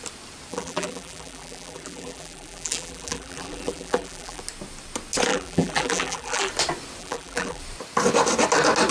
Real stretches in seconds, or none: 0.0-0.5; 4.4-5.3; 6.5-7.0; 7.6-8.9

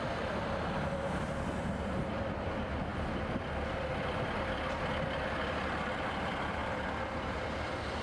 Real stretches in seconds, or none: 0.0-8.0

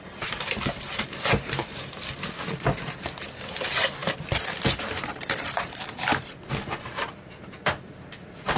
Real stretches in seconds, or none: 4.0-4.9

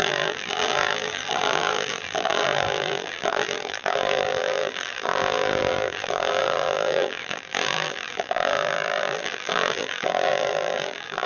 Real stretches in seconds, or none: none

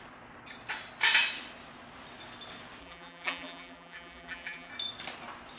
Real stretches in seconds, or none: 0.0-2.8; 4.7-5.6

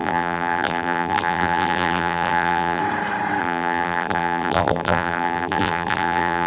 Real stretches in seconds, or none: 2.8-3.4

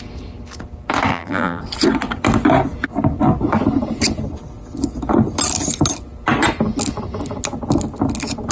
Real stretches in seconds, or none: 0.0-1.1; 1.6-8.5